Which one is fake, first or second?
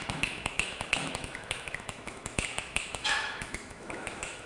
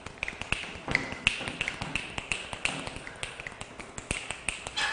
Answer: first